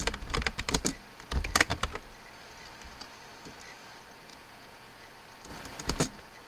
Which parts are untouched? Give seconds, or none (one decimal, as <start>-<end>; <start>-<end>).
0.0-4.3; 5.1-6.5